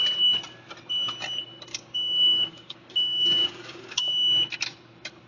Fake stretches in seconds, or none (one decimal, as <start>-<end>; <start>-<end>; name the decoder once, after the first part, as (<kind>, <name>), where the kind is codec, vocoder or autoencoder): 1.7-4.1 (codec, DAC)